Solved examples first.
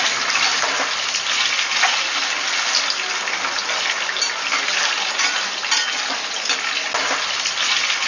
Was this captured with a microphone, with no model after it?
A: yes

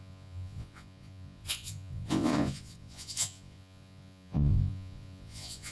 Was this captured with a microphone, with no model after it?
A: no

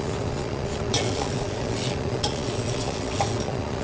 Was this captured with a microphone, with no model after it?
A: no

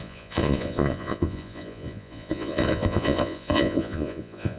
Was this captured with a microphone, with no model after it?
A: no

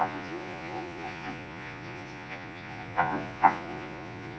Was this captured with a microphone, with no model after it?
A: no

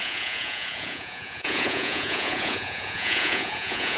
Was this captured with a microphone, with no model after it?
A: no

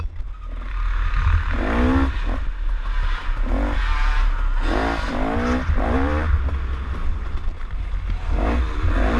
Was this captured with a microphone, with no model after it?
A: yes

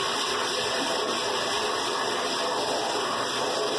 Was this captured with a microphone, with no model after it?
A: yes